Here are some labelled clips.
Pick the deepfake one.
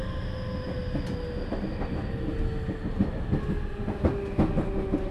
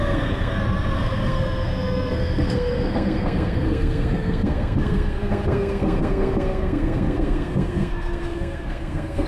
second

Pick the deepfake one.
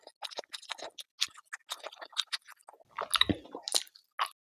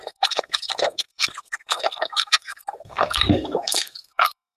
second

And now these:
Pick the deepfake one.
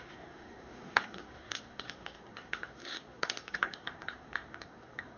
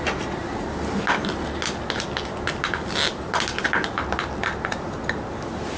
first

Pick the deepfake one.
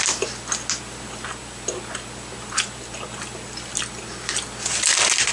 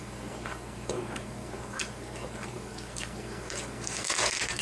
second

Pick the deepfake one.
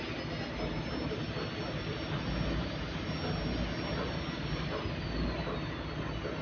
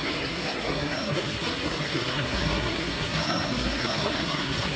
second